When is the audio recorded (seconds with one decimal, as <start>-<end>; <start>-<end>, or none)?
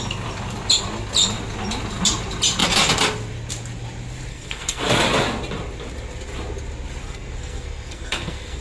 0.0-4.3; 4.8-7.0